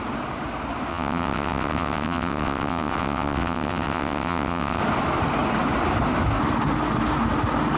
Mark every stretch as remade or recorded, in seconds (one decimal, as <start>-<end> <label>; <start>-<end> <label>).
0.0-0.9 recorded; 0.9-4.8 remade; 4.8-7.8 recorded